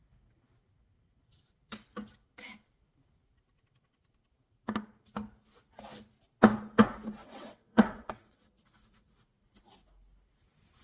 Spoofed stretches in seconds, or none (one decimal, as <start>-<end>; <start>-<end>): 7.2-8.5